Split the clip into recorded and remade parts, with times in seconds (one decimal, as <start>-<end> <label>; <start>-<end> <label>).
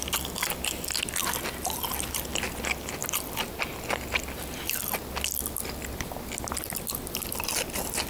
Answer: 0.0-8.1 recorded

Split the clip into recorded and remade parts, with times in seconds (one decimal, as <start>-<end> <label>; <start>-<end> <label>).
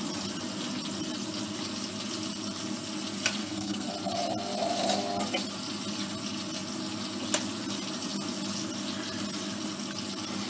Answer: 0.0-3.4 recorded; 3.4-3.9 remade; 3.9-10.5 recorded